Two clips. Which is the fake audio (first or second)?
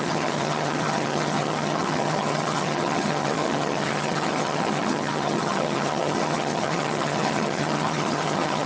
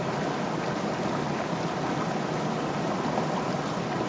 first